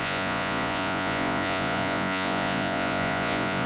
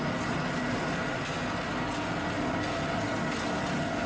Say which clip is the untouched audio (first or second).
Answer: second